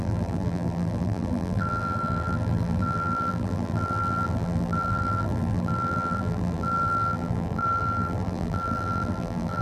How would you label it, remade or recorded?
remade